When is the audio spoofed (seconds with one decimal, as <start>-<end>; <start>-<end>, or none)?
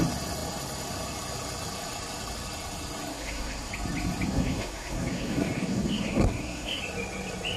3.1-3.7; 4.3-6.8